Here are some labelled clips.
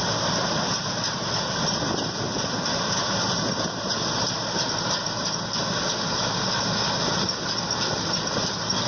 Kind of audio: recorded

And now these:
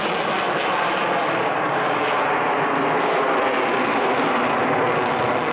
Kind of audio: recorded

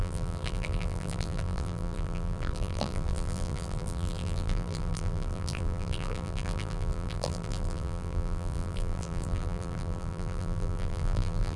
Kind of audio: remade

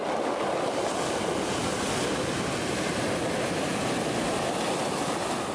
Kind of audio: recorded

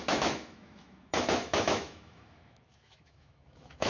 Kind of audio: remade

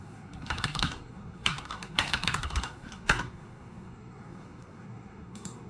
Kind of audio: remade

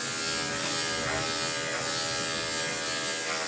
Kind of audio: recorded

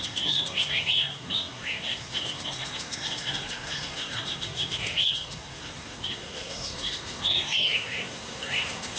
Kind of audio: remade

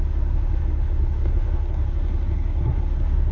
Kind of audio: remade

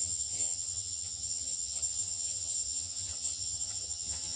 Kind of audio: remade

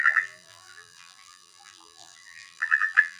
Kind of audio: remade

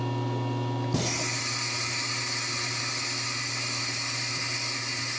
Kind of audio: recorded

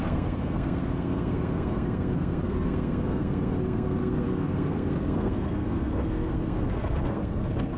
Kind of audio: remade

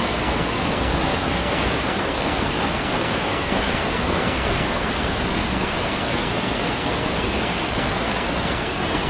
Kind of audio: remade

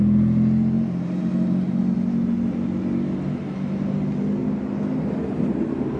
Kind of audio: recorded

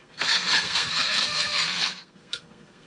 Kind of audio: remade